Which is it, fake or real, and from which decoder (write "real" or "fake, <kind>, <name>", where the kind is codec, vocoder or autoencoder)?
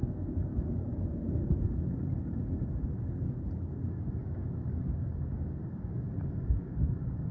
fake, codec, DAC